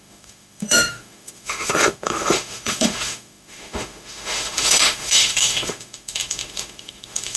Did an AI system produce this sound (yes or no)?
yes